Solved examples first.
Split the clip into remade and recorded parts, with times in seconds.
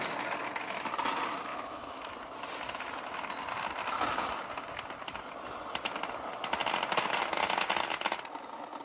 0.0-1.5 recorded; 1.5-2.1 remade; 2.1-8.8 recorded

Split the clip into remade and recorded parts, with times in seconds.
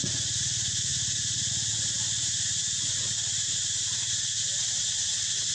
0.0-5.5 recorded